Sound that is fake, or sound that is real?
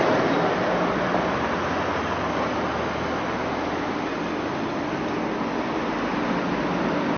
real